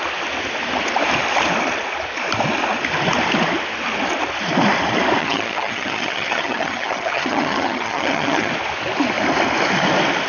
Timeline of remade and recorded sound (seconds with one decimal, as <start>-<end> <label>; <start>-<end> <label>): 0.0-5.2 recorded; 5.2-8.5 remade; 8.5-10.3 recorded